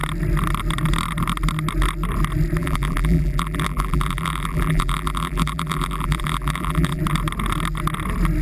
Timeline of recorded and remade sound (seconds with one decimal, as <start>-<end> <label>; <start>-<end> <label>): 0.0-2.6 recorded; 2.6-7.0 remade; 7.0-8.4 recorded